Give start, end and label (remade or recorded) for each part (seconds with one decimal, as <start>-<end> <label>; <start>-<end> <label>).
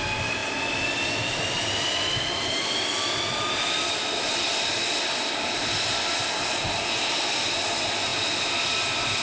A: 0.0-9.2 recorded